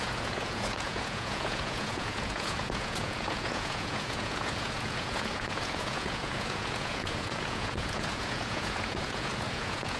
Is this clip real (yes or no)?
no